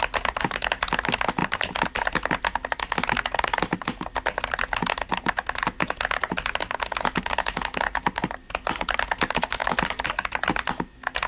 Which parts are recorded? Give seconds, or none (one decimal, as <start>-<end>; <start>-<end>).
0.0-11.3